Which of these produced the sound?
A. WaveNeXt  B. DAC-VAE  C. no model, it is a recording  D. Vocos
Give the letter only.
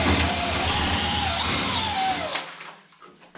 C